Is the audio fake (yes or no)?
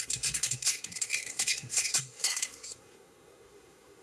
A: yes